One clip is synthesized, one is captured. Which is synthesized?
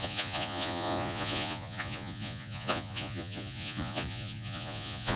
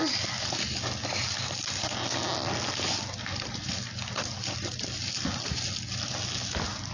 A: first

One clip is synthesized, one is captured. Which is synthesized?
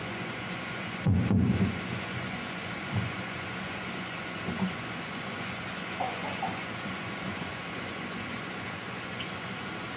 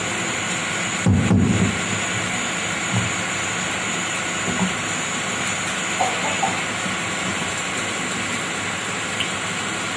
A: first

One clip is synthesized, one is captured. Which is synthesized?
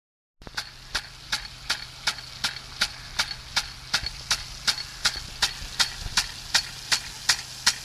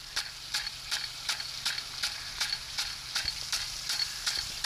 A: second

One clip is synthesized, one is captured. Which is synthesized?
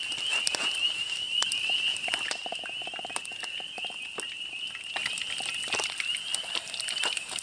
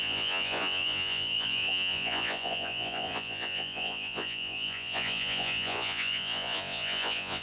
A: second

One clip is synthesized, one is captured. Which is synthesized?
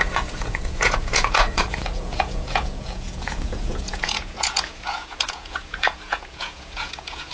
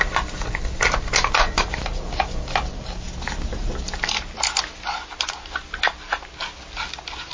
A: first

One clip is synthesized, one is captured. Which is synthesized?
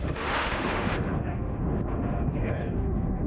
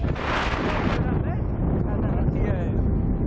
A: first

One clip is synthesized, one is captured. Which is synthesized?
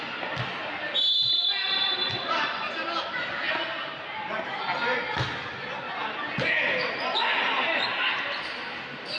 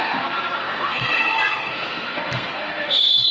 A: second